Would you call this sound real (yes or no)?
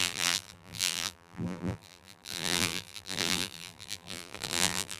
no